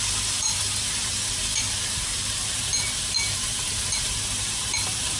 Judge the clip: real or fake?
fake